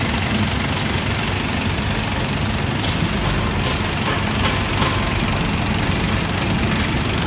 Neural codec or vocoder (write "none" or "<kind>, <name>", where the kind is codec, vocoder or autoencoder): vocoder, BigVGAN v2